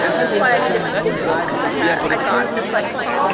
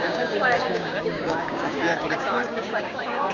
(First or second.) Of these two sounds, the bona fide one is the first